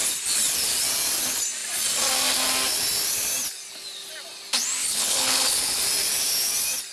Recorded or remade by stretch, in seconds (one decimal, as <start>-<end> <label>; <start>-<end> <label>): 0.0-4.8 recorded; 4.8-5.8 remade; 5.8-6.9 recorded